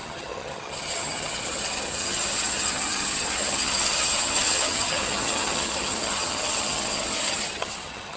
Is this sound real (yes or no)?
no